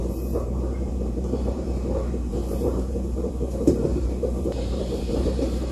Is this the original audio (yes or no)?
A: no